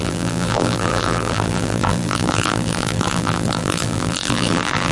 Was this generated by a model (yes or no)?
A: yes